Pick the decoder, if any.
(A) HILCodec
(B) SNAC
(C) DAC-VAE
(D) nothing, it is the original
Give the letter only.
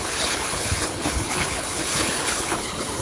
A